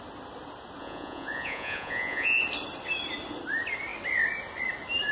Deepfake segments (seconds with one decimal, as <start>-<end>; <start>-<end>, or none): 0.8-2.4